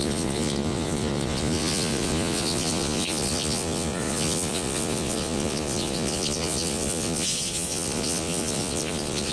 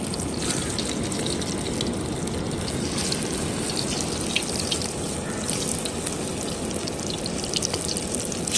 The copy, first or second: first